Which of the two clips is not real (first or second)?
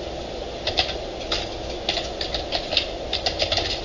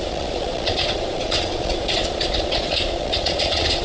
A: second